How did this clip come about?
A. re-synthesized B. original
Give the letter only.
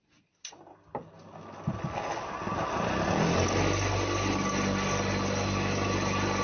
B